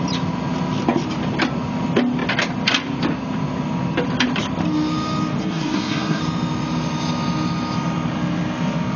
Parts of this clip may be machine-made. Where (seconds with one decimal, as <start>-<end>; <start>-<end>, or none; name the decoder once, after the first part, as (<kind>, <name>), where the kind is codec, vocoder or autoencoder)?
5.4-6.2 (codec, SNAC)